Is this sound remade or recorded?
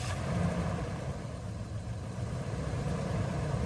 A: remade